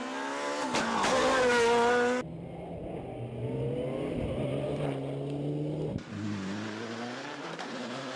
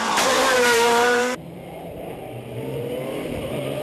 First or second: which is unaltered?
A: first